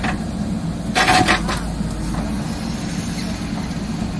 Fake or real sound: real